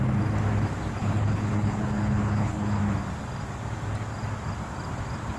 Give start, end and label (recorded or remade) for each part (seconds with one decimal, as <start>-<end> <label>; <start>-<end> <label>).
0.0-1.0 recorded; 1.0-2.8 remade; 2.8-5.4 recorded